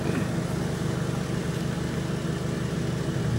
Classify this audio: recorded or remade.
recorded